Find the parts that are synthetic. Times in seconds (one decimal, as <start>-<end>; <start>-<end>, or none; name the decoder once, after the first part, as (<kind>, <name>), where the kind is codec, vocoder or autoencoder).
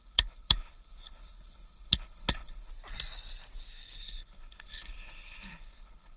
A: 0.0-2.7 (codec, HILCodec); 4.0-6.2